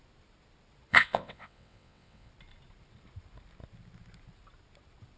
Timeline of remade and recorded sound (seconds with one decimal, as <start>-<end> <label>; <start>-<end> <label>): 0.0-0.9 recorded; 0.9-2.3 remade; 2.3-5.2 recorded